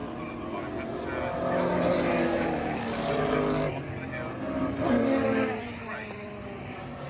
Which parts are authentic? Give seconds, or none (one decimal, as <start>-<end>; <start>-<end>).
0.0-2.3; 3.1-7.1